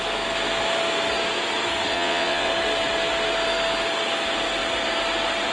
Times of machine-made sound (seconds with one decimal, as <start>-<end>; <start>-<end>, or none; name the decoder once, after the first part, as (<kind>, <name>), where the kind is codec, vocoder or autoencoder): 1.9-2.5 (vocoder, WaveNeXt)